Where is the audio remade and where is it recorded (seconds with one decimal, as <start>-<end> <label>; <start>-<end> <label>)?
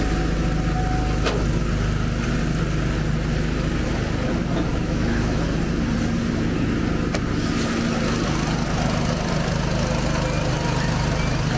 0.0-4.7 recorded; 4.7-5.4 remade; 5.4-11.6 recorded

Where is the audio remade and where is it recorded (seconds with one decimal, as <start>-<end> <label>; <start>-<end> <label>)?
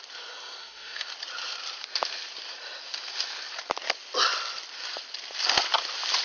0.0-0.6 recorded; 0.6-1.1 remade; 1.1-6.2 recorded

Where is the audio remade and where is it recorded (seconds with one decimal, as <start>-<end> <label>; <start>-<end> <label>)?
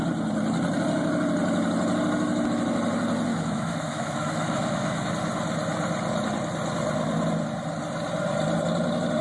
0.0-3.3 recorded; 3.3-5.1 remade; 5.1-9.2 recorded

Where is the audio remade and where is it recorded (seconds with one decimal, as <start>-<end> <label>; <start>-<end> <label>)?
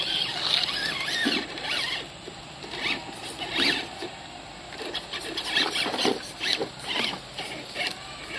0.0-8.4 recorded